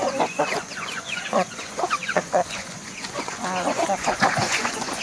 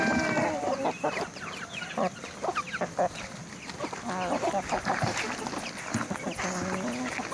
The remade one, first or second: first